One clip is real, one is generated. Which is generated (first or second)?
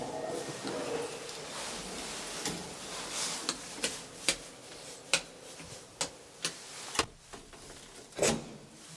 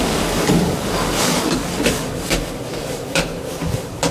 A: second